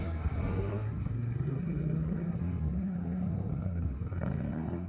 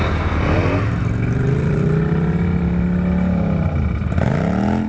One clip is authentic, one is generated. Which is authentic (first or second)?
second